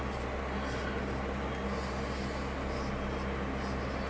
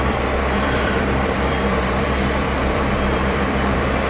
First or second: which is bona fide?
first